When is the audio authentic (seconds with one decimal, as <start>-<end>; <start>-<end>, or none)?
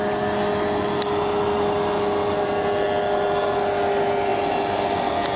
0.0-5.4